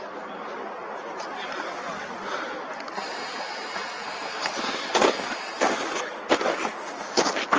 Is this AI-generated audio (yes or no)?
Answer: no